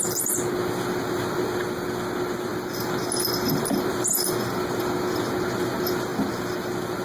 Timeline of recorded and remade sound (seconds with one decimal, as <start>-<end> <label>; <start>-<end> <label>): 0.0-7.0 recorded